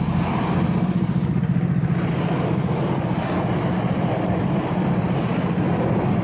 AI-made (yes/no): no